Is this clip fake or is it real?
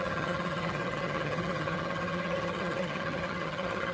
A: fake